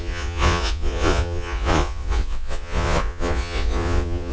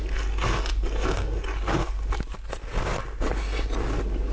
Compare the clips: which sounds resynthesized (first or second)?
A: first